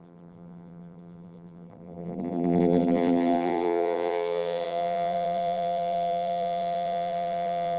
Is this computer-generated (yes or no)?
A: yes